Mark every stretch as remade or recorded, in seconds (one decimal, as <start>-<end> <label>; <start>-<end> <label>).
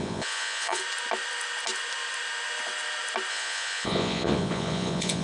0.0-0.8 remade; 0.8-3.3 recorded; 3.3-5.2 remade